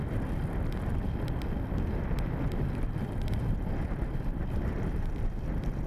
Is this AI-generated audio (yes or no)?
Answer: yes